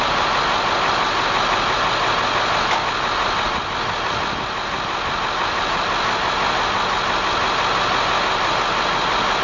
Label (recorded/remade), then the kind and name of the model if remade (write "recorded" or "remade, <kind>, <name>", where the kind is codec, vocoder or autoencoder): recorded